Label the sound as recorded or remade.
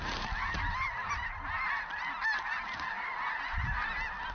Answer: recorded